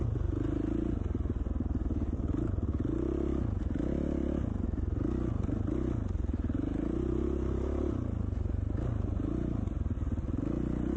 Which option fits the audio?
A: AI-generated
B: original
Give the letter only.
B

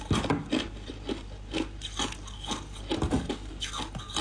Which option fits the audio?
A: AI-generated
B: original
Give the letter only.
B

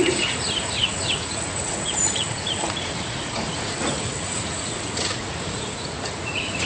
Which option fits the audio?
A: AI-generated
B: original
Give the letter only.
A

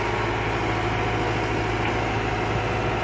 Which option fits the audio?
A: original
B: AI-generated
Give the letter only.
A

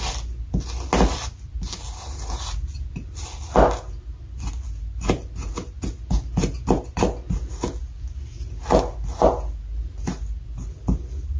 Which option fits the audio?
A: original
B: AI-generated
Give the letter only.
A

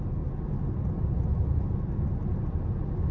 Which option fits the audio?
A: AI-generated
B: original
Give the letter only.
B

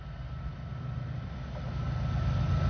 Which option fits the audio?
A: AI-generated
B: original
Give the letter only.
B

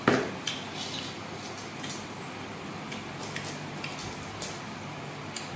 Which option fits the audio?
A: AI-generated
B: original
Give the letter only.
B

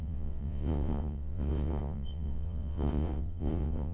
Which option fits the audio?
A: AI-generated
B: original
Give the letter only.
A